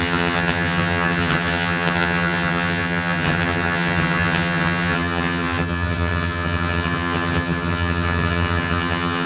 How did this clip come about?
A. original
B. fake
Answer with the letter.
B